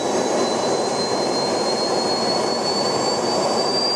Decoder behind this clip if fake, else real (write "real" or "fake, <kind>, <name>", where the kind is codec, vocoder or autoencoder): fake, vocoder, BigVGAN v2